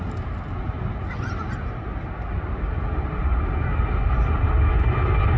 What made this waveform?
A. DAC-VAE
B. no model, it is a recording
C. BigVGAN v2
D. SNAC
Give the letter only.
B